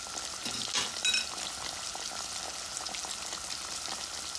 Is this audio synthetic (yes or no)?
no